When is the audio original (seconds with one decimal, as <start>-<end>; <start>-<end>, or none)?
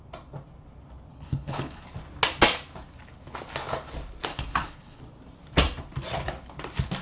0.0-1.1; 1.8-4.3; 5.0-7.0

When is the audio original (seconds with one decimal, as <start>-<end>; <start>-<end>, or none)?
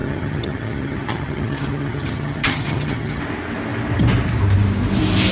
3.2-5.3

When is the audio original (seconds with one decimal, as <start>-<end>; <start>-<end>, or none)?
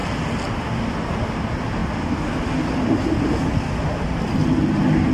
0.0-5.1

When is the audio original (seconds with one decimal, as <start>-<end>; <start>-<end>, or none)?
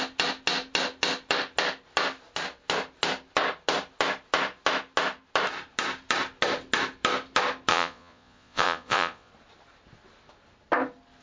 0.0-7.7; 9.3-11.2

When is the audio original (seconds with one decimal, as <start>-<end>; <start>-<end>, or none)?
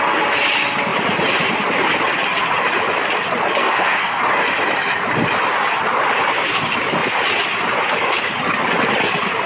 0.0-3.6; 4.2-9.5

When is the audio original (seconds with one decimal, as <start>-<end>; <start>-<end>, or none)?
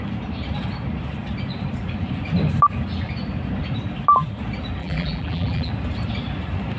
0.0-4.8; 5.7-6.8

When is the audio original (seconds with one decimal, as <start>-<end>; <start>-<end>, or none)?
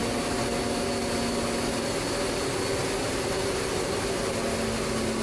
0.0-5.2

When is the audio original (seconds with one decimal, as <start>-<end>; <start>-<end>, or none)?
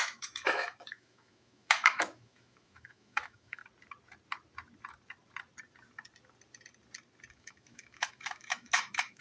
3.6-7.3